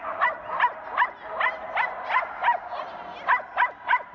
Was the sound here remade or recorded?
recorded